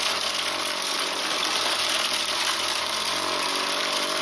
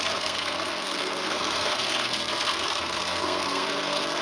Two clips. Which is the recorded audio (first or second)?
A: first